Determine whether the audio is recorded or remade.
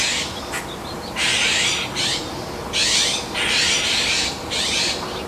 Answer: recorded